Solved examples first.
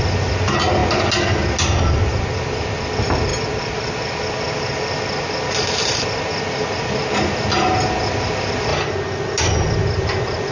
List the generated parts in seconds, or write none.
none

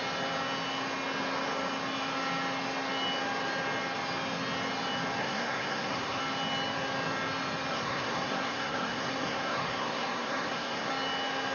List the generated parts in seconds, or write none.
5.2-6.2 (codec, SNAC); 7.7-10.9

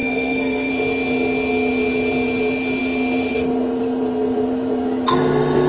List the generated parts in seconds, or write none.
0.0-0.7 (codec, SNAC)

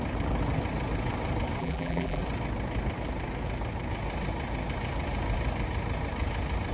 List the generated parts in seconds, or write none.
1.6-2.2 (vocoder, BigVGAN v2)

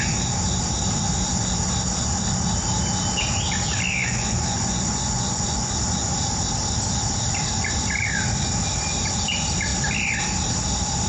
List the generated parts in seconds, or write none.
4.0-5.7 (vocoder, Vocos)

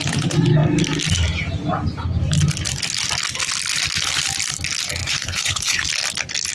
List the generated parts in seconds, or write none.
5.0-5.9 (codec, HILCodec)

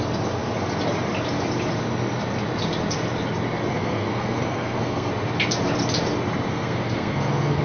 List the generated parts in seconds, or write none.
3.7-5.1 (codec, SNAC); 6.5-7.6